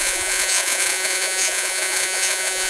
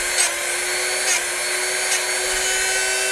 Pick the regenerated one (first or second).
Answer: first